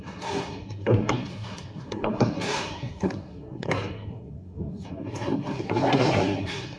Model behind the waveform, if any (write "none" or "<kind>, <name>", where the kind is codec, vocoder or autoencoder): codec, SNAC